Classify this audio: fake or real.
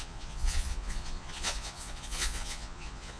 fake